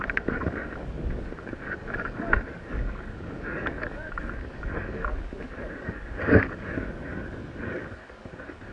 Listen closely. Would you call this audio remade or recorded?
remade